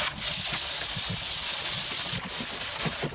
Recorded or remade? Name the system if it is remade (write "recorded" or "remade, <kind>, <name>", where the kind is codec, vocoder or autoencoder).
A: recorded